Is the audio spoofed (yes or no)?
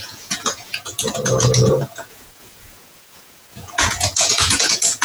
yes